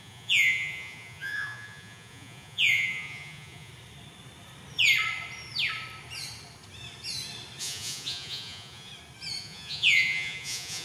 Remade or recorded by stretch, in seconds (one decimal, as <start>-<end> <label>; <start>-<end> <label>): 0.0-3.7 remade; 3.7-7.6 recorded; 7.6-8.9 remade; 8.9-9.4 recorded; 9.4-10.8 remade